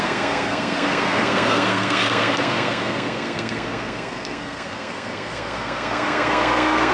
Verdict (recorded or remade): remade